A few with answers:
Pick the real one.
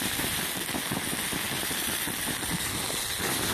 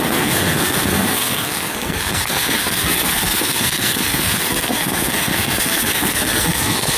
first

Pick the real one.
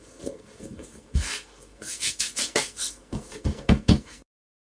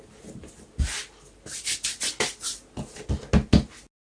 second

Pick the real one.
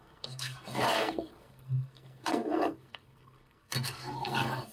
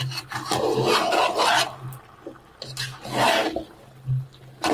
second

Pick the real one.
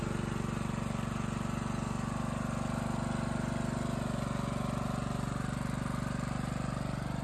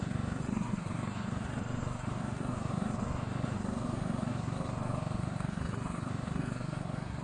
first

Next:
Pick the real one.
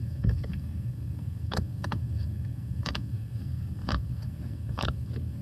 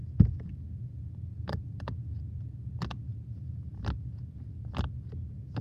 second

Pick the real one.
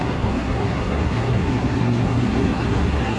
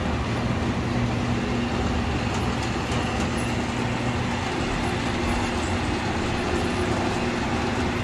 second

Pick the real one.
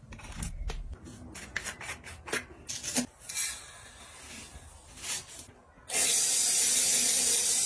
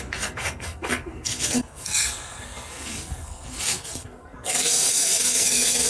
first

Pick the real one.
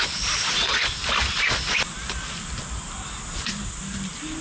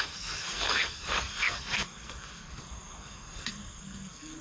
first